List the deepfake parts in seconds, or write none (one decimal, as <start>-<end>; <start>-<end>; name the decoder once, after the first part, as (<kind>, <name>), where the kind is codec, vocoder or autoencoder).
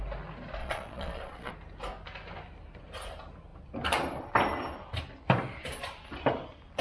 0.6-1.5 (vocoder, Vocos)